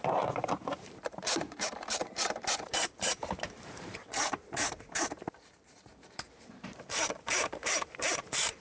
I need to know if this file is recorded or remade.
remade